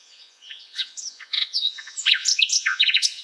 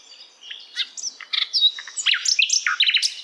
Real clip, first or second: second